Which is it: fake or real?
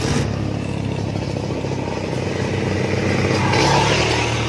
real